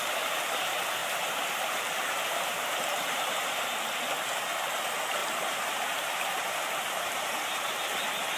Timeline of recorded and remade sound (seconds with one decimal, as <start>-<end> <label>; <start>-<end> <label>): 0.0-1.0 recorded; 1.0-4.0 remade; 4.0-5.2 recorded; 5.2-7.7 remade; 7.7-8.4 recorded